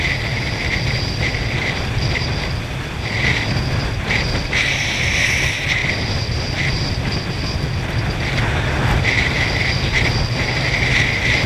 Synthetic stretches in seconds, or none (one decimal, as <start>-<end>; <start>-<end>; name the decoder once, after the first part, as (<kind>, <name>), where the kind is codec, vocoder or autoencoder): none